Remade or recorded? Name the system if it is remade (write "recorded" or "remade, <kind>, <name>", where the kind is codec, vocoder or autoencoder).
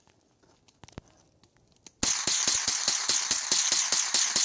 recorded